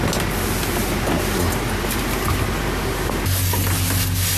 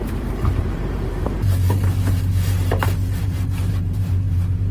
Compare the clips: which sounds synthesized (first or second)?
second